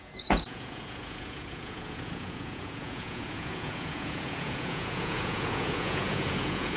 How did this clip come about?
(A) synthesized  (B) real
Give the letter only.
A